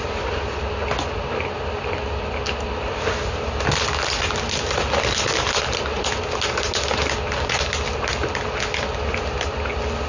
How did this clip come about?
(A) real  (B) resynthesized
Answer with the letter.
A